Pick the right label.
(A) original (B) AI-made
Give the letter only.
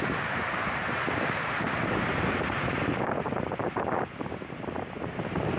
B